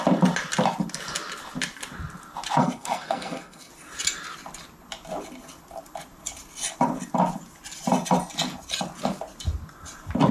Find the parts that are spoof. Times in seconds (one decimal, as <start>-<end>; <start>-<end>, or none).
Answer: 2.6-3.7